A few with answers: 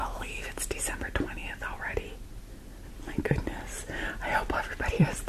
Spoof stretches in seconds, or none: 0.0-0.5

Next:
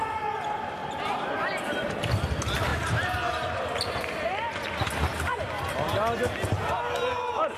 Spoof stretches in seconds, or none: 0.8-1.9; 2.7-3.6

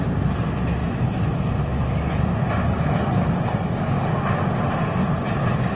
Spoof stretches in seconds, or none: 0.8-1.9

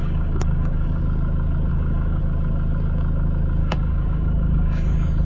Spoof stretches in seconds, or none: 0.0-1.0; 1.7-2.2; 3.6-5.2

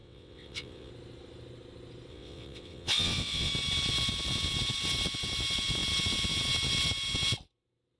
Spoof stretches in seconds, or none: 0.0-0.9; 2.1-3.5